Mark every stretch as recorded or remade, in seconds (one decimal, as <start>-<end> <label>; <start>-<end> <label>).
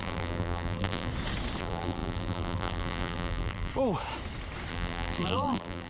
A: 0.0-1.1 remade; 1.1-1.6 recorded; 1.6-3.7 remade; 3.7-4.7 recorded; 4.7-5.9 remade